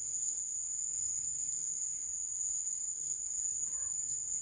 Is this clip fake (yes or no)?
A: yes